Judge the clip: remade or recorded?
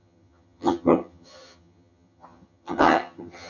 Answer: remade